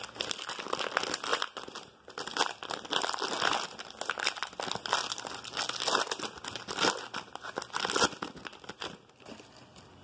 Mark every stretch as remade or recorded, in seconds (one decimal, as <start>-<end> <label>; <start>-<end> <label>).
0.0-10.0 recorded